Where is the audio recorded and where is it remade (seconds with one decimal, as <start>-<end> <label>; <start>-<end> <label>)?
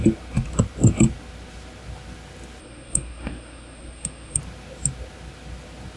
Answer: 0.0-2.6 recorded; 2.6-4.4 remade; 4.4-6.0 recorded